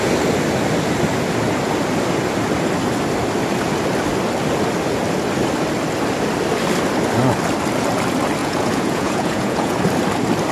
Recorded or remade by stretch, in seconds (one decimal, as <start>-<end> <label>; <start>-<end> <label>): 0.0-8.4 recorded; 8.4-9.8 remade; 9.8-10.5 recorded